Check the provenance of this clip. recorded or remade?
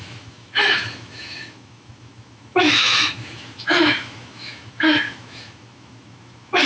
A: remade